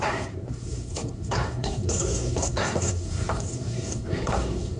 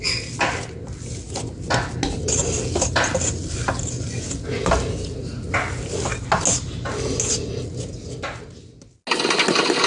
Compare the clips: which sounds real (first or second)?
second